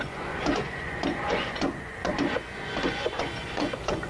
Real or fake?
fake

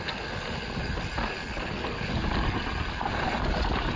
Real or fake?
real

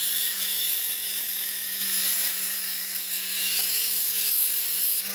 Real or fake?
fake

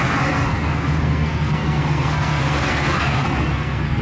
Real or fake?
fake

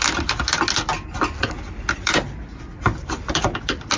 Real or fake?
real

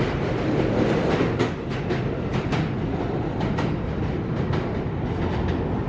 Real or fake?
real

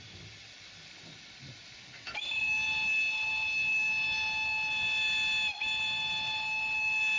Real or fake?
real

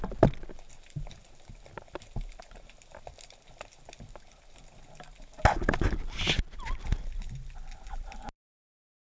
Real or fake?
real